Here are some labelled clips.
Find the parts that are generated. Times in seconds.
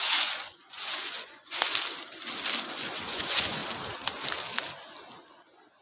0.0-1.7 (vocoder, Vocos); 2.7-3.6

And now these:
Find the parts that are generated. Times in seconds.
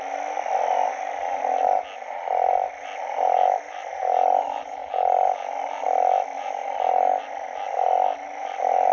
none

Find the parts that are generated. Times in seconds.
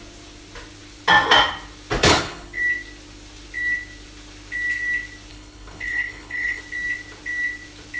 2.0-2.6 (codec, HILCodec); 5.3-6.6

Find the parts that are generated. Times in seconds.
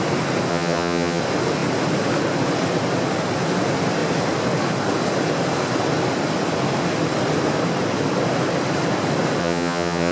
0.5-1.2 (vocoder, HiFi-GAN); 9.4-10.1